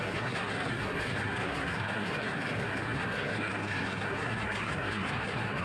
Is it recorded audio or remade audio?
remade